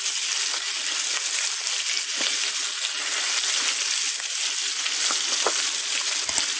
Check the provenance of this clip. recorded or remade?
recorded